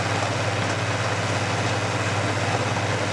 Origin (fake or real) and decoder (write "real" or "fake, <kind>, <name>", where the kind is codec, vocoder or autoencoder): real